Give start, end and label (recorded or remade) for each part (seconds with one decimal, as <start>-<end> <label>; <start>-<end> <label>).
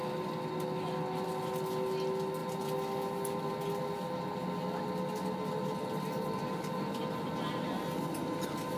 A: 0.0-8.8 recorded